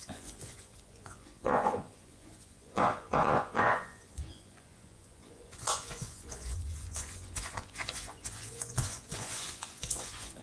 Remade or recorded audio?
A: remade